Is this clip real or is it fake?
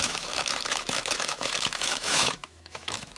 fake